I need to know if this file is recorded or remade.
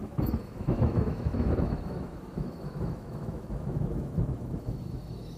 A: remade